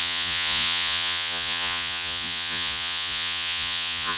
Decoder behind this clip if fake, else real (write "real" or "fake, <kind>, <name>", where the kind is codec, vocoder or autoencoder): fake, vocoder, Vocos